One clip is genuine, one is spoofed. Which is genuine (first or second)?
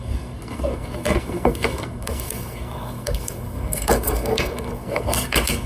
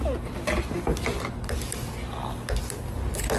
second